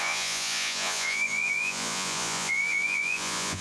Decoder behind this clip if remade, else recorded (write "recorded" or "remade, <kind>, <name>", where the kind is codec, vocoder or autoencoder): remade, vocoder, Vocos